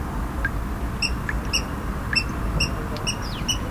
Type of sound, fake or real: real